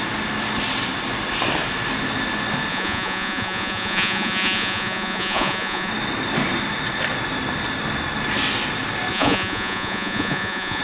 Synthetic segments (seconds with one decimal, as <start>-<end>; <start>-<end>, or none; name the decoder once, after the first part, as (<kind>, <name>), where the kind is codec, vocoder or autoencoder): 2.7-5.9 (vocoder, Vocos); 9.1-10.8

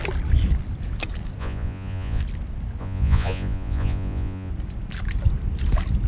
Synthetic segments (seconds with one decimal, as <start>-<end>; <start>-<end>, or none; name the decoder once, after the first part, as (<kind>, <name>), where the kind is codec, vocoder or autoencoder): 1.4-2.2 (vocoder, Vocos); 2.8-4.5

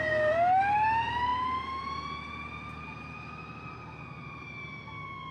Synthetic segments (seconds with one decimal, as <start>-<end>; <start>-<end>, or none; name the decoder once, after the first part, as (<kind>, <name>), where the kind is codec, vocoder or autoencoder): none

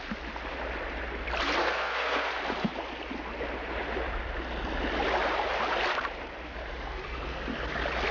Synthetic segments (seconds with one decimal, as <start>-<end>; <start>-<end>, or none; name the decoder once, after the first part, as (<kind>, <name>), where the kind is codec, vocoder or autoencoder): 1.6-2.3 (codec, SNAC)